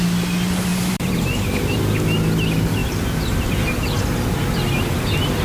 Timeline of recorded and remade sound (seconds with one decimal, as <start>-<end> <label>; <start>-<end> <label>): 0.0-0.7 recorded; 0.7-1.8 remade; 1.8-5.4 recorded